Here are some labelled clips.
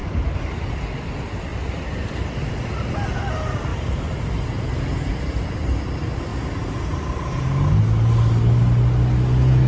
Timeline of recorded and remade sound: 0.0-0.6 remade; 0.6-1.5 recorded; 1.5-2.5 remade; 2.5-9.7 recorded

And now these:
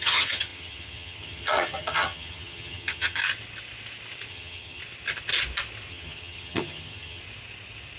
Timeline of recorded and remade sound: 0.0-3.2 remade; 3.2-4.3 recorded; 4.3-4.8 remade; 4.8-5.9 recorded; 5.9-7.2 remade; 7.2-8.0 recorded